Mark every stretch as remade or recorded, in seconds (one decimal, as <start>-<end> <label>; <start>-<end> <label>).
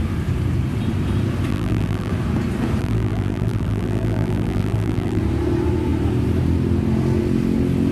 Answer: 0.0-1.5 recorded; 1.5-2.1 remade; 2.1-2.8 recorded; 2.8-5.2 remade; 5.2-7.9 recorded